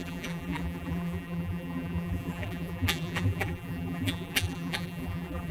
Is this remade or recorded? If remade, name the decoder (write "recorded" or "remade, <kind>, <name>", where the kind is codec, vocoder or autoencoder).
remade, vocoder, BigVGAN v2